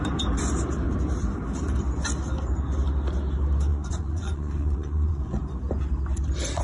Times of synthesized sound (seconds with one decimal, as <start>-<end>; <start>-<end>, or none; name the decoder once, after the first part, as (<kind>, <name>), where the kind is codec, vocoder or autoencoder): 3.7-5.4 (vocoder, Vocos)